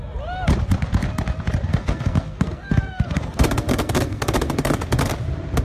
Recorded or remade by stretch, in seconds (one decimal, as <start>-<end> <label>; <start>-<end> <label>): 0.0-1.7 recorded; 1.7-5.1 remade; 5.1-5.6 recorded